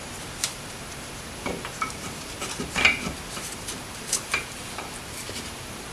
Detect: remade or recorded remade